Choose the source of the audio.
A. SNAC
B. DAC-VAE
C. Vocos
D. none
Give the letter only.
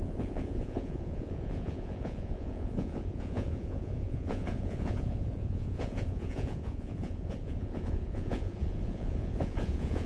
C